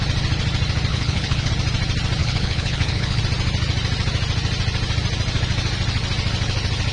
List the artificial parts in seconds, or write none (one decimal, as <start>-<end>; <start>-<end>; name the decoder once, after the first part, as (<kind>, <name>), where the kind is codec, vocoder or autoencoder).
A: 0.9-1.5 (codec, HILCodec); 2.2-3.2